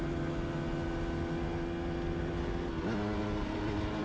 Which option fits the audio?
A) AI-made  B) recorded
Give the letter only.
B